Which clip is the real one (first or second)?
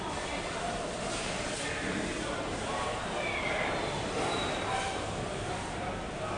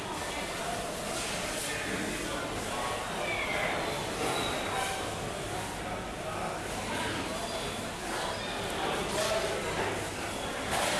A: second